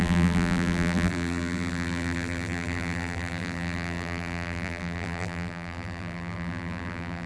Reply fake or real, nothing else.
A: fake